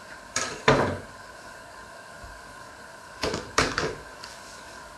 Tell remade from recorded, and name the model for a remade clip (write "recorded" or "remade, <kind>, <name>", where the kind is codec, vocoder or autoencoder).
remade, codec, DAC